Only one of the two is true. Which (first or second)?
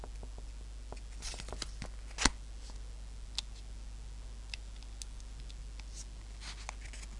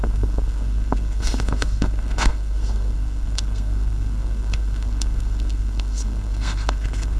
first